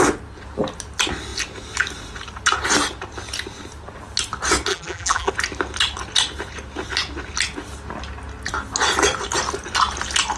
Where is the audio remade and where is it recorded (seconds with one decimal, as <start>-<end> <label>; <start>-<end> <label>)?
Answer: 0.0-4.7 recorded; 4.7-5.3 remade; 5.3-10.4 recorded